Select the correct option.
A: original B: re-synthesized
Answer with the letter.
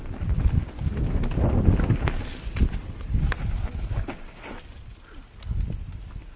A